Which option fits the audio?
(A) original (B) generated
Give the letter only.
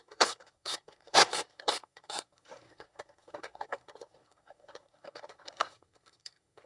B